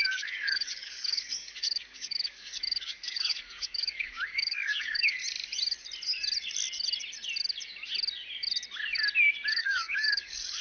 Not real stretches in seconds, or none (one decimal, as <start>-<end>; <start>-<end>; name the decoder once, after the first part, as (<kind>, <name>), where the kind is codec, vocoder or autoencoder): 0.0-5.2 (codec, DAC); 9.6-10.6